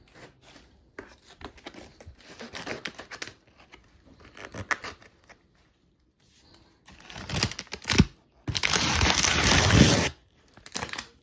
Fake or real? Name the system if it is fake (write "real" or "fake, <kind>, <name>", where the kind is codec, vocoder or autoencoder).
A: real